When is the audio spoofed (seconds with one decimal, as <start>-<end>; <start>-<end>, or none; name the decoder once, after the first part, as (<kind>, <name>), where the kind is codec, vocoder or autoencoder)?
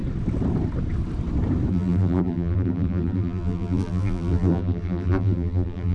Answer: 1.7-5.9 (vocoder, BigVGAN v2)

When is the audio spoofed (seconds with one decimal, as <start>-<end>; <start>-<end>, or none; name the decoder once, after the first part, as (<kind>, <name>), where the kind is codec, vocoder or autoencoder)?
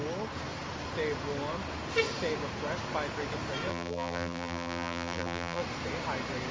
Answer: 3.7-5.6 (vocoder, BigVGAN v2)